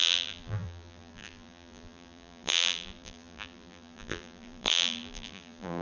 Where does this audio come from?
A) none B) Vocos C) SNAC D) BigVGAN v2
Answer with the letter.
D